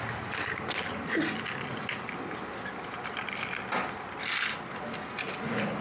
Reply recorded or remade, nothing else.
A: recorded